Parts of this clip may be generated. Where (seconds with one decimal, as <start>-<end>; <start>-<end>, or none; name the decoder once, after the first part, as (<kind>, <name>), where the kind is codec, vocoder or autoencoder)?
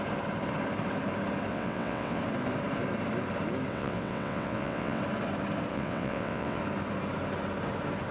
1.5-2.2 (vocoder, WaveNeXt); 3.7-5.0; 5.7-6.6